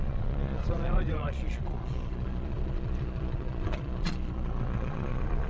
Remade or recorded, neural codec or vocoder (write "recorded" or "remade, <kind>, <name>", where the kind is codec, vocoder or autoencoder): remade, vocoder, Vocos